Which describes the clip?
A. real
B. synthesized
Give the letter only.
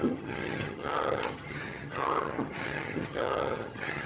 B